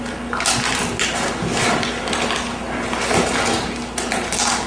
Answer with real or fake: real